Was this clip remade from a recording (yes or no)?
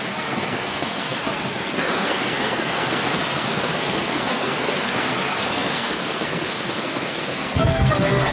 yes